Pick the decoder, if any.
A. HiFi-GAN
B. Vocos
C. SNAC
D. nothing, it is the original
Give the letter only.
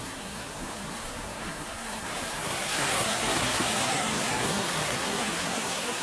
C